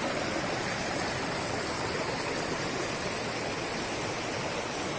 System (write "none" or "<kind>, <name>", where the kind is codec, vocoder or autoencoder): none